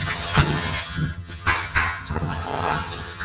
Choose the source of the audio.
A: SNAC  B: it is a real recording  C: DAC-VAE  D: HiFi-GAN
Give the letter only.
D